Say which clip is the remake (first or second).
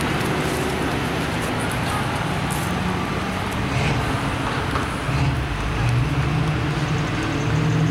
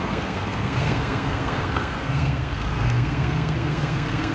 second